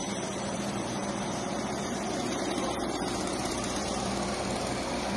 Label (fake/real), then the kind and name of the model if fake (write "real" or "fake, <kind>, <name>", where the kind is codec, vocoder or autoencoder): fake, vocoder, BigVGAN v2